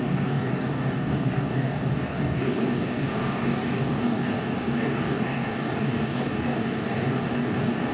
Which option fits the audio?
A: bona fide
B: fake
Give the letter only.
B